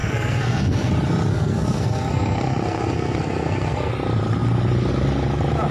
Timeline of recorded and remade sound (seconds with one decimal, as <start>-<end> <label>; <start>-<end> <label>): 0.0-0.9 remade; 0.9-1.3 recorded; 1.3-3.9 remade; 3.9-5.7 recorded